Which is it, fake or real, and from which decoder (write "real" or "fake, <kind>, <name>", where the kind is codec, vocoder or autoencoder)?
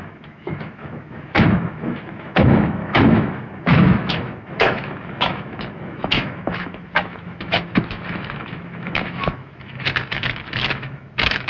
fake, autoencoder, DAC-VAE